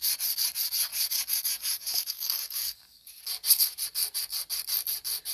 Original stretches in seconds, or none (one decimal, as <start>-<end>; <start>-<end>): 0.0-0.9; 3.2-5.3

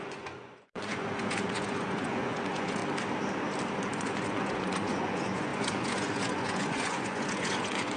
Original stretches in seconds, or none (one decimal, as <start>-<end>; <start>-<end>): 2.8-3.8

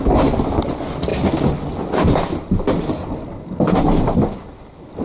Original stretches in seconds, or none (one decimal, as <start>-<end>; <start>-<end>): 0.0-5.0

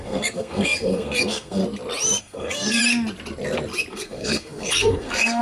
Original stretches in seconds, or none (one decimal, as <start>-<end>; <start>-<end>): 1.6-2.2; 2.8-3.9

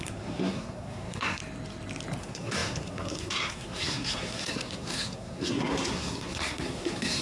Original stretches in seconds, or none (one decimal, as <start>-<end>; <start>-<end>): 1.4-2.2

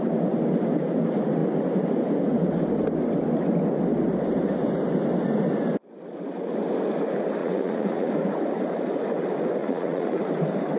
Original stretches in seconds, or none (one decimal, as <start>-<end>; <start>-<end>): 0.0-7.4; 8.1-9.6; 10.2-10.8